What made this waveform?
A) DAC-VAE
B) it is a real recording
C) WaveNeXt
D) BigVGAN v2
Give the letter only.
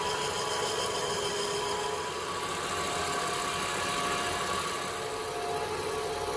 B